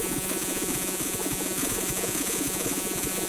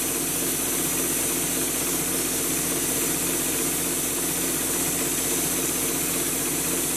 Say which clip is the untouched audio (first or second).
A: second